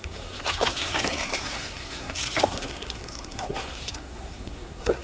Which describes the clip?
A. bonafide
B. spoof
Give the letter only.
B